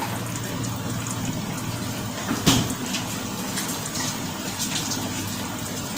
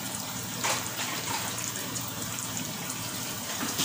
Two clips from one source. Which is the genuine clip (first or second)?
first